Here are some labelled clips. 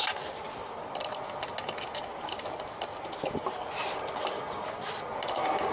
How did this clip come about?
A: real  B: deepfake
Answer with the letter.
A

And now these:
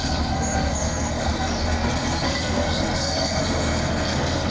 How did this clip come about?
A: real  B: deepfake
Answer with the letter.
B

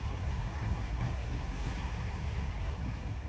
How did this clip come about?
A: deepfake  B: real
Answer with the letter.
A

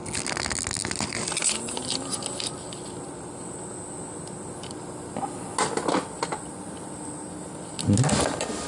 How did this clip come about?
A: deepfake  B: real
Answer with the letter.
B